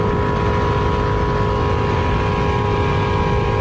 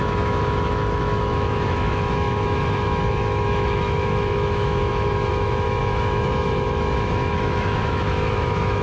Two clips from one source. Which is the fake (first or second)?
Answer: second